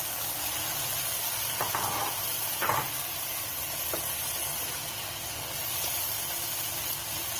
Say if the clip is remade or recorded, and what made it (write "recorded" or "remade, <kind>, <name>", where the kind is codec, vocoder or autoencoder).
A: recorded